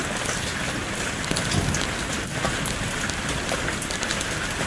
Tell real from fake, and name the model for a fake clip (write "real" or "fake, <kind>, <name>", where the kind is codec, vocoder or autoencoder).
real